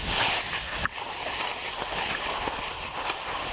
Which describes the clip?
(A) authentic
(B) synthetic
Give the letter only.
A